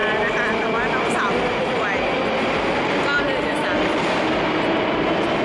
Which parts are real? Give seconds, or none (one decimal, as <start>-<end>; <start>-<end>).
0.0-5.4